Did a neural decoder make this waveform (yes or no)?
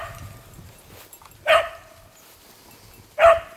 no